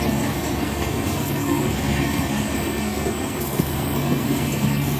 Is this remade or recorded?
remade